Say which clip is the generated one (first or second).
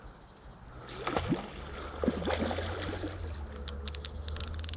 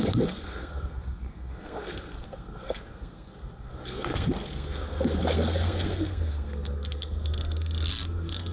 second